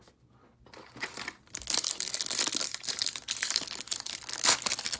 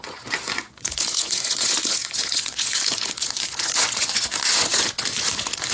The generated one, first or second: second